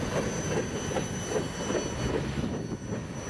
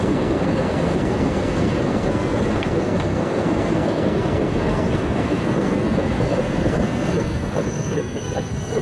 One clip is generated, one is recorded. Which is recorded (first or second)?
first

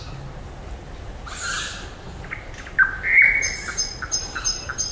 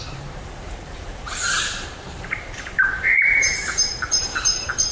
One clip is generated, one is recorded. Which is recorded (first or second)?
first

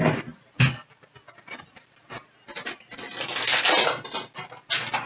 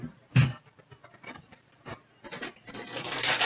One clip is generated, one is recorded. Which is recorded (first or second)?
first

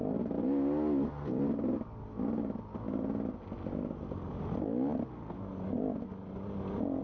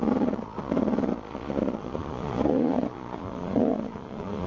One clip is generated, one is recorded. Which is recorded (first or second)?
first